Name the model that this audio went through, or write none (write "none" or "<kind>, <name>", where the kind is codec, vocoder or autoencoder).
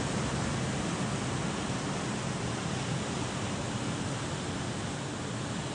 none